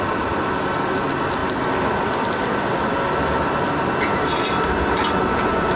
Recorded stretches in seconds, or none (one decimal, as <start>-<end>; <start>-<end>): 0.0-5.8